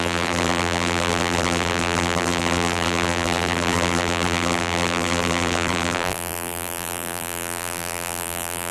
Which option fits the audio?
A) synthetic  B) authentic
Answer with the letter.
A